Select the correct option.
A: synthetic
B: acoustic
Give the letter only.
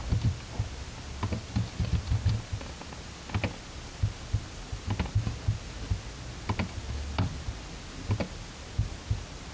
B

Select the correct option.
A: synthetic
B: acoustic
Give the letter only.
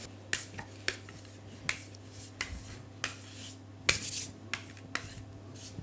B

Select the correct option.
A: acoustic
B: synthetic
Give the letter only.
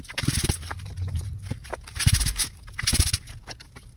B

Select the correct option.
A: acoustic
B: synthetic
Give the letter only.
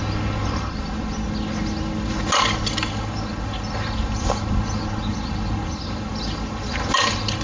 A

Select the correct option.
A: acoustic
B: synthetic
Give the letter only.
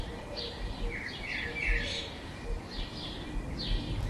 A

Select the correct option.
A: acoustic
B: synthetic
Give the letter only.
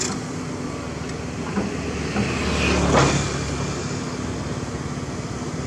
A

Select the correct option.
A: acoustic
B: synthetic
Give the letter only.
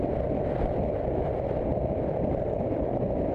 B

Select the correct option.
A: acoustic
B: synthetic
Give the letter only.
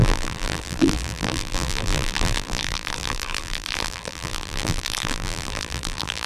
B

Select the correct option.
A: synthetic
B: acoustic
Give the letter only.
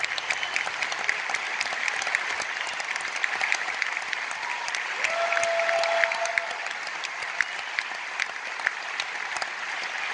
B